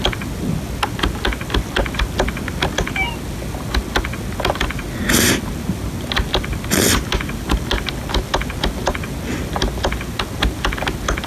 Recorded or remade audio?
recorded